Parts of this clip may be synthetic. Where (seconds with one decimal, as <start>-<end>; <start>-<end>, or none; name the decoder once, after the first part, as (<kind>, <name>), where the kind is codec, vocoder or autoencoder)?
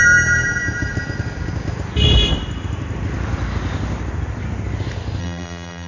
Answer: 5.2-5.9 (vocoder, BigVGAN v2)